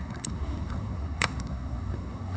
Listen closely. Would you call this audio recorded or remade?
remade